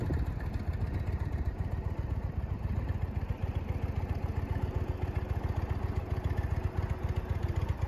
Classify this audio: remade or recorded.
recorded